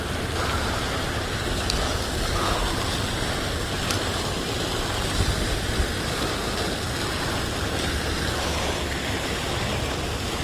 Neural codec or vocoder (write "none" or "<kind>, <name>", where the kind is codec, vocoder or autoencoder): none